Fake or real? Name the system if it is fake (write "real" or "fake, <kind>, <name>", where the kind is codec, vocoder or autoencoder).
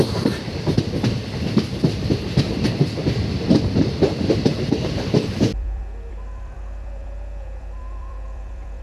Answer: fake, vocoder, BigVGAN v2